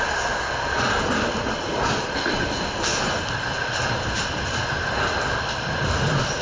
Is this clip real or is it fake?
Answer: fake